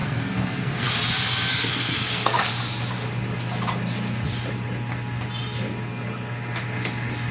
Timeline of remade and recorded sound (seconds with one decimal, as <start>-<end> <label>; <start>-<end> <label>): 0.0-0.9 remade; 0.9-1.5 recorded; 1.5-2.5 remade; 2.5-7.3 recorded